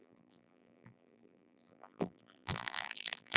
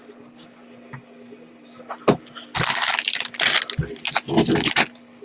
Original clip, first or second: second